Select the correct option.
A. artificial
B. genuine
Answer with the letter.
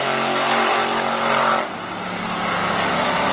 B